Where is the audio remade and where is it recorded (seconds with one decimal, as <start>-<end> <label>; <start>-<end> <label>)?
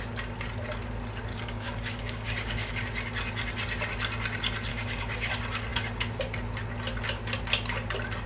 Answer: 0.0-1.3 recorded; 1.3-2.7 remade; 2.7-4.7 recorded; 4.7-5.3 remade; 5.3-8.3 recorded